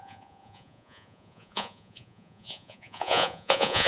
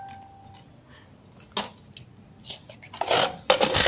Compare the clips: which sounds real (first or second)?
second